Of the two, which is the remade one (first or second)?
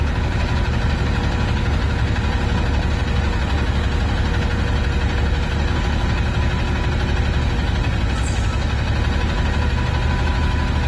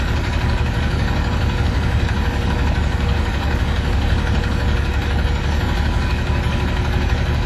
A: second